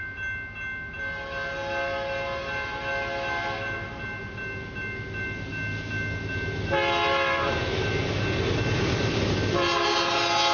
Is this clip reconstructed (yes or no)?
no